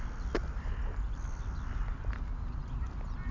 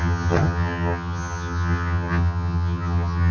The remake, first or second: second